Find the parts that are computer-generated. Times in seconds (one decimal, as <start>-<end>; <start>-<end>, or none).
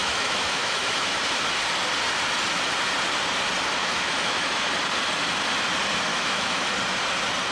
0.0-1.2; 3.8-4.6; 6.1-6.7